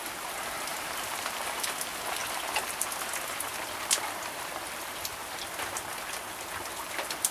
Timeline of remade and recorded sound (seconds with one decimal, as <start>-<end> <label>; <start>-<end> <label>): 0.0-7.3 recorded